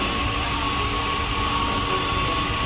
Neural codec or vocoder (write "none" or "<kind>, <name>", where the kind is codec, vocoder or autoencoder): none